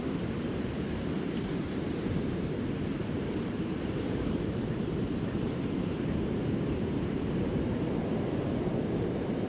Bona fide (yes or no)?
no